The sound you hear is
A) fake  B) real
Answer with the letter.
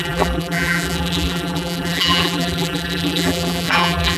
A